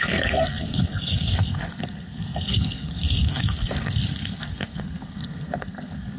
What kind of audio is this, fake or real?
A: fake